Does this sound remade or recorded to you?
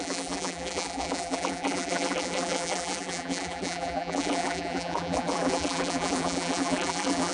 remade